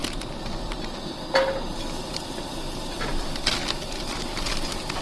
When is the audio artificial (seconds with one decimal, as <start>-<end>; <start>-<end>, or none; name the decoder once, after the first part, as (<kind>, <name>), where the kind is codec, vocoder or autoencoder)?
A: none